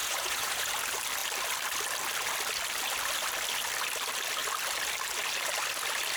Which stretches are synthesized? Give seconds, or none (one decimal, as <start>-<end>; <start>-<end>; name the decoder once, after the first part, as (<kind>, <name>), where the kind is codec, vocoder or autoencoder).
0.0-0.7 (vocoder, Vocos)